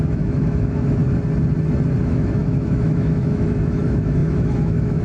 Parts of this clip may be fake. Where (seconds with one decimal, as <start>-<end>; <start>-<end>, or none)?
0.0-1.0; 2.0-5.0